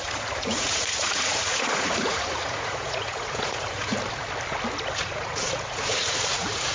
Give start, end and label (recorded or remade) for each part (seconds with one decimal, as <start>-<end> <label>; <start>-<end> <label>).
0.0-3.9 remade; 3.9-5.0 recorded; 5.0-6.7 remade